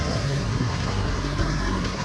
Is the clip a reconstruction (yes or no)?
yes